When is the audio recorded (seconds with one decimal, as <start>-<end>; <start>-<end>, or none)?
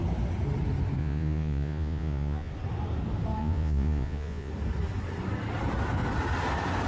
0.0-1.0; 2.5-3.4; 4.5-6.9